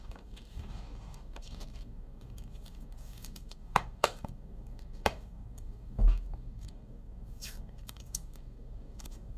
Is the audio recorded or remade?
remade